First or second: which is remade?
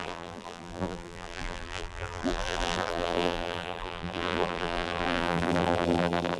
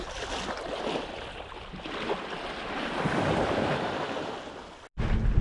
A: first